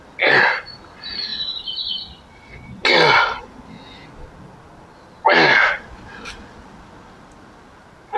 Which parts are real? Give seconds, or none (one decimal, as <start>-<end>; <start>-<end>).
0.0-8.2